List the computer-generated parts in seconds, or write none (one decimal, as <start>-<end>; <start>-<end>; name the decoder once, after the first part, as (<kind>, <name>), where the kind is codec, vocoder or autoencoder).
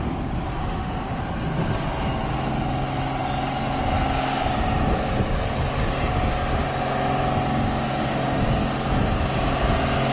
0.6-1.2 (autoencoder, DAC-VAE)